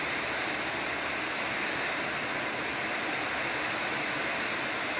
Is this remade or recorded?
recorded